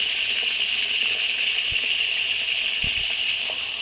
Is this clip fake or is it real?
real